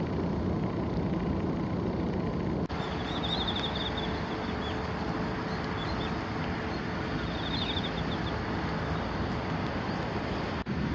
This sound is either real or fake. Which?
real